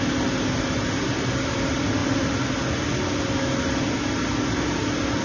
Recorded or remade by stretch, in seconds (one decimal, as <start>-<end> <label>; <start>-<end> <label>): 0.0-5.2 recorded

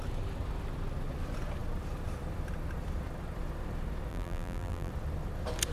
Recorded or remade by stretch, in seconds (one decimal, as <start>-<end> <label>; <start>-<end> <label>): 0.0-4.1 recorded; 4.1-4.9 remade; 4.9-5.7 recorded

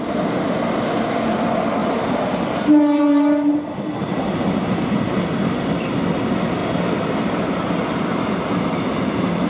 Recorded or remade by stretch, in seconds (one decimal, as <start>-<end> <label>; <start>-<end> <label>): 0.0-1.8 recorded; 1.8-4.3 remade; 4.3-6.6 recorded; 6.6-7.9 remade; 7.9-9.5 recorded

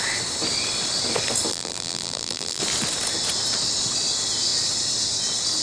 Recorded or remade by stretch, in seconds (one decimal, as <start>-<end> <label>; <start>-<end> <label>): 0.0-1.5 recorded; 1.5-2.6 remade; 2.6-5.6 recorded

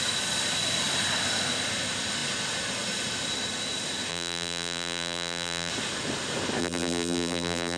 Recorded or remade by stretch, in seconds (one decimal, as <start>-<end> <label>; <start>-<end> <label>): 0.0-4.1 recorded; 4.1-5.7 remade; 5.7-6.6 recorded; 6.6-7.8 remade